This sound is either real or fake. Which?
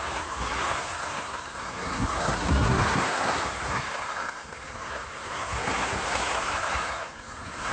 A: fake